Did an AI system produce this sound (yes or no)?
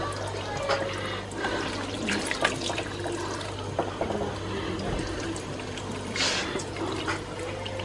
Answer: yes